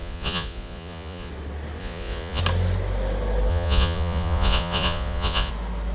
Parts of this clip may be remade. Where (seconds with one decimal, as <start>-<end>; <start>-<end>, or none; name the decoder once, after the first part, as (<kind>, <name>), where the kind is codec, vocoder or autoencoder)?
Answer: 0.0-1.3 (vocoder, Vocos); 1.8-2.4; 3.5-5.5